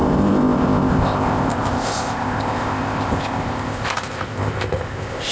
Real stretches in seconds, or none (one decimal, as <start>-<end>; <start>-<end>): none